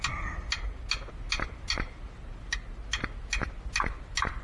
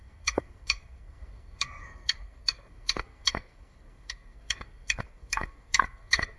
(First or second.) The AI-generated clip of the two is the second